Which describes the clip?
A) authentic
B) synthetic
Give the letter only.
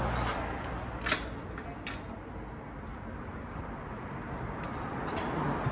A